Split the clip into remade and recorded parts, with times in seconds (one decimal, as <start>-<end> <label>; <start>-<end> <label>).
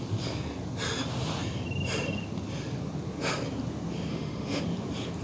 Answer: 0.0-4.1 recorded; 4.1-4.6 remade; 4.6-5.2 recorded